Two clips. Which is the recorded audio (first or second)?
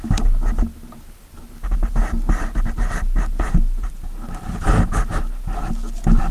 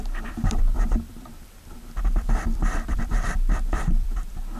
first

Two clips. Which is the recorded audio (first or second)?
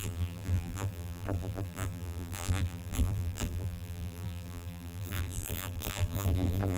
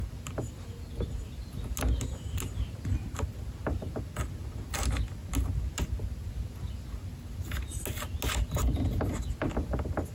second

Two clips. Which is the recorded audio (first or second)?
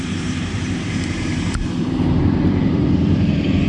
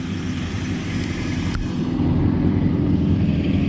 second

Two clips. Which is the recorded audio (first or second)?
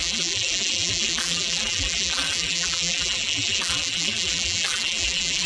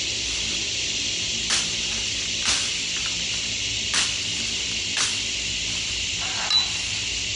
second